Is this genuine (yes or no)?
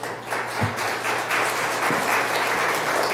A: yes